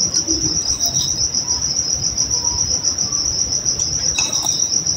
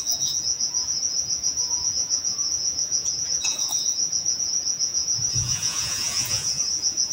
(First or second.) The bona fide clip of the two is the first